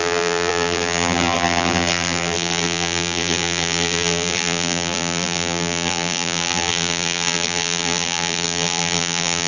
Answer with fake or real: fake